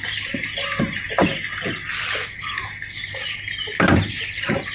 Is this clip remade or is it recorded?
recorded